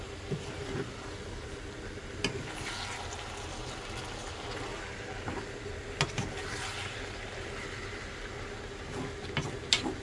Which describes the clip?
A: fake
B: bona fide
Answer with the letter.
B